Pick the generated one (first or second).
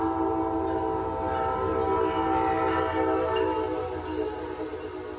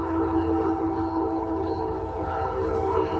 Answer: second